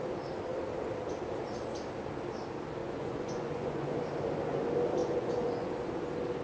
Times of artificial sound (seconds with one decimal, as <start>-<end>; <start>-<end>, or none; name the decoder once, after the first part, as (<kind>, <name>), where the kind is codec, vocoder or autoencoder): 2.8-4.0 (vocoder, Vocos); 5.0-5.7